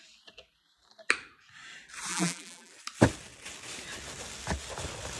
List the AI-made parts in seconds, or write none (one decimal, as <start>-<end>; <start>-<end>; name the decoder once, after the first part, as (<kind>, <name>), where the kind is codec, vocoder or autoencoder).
2.1-2.7 (vocoder, BigVGAN v2)